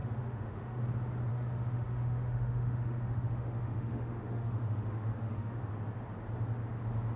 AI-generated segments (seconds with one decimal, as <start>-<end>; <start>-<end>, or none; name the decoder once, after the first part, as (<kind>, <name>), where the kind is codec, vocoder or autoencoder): 0.0-0.8 (autoencoder, DAC-VAE); 1.3-5.6